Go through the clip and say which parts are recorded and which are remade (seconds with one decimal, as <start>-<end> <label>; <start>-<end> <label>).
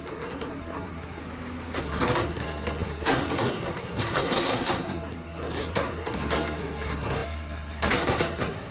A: 0.0-1.2 remade; 1.2-1.8 recorded; 1.8-8.7 remade